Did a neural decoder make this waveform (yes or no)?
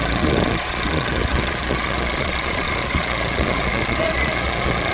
yes